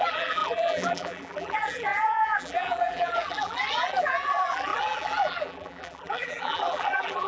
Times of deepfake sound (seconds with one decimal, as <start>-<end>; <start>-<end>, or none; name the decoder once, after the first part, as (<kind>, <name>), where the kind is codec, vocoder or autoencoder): 0.0-7.3 (vocoder, BigVGAN v2)